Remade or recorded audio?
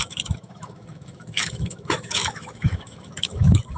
remade